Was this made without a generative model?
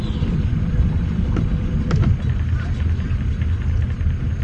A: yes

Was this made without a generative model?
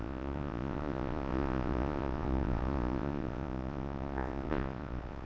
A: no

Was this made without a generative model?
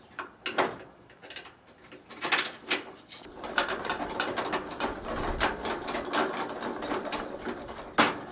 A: yes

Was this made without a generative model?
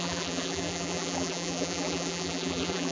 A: no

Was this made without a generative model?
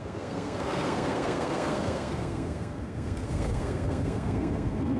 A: no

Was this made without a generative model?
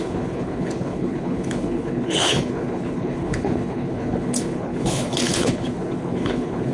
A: no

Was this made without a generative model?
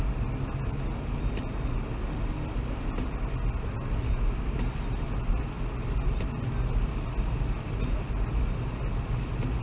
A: yes